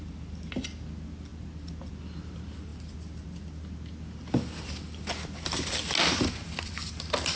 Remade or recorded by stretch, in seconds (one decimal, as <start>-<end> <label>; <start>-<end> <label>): 0.0-7.4 recorded